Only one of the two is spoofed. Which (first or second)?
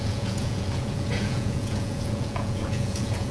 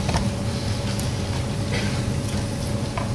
first